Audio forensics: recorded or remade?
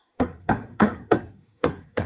remade